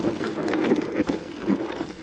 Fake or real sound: fake